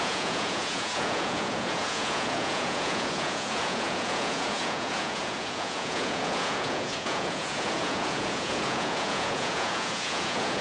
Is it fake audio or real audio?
fake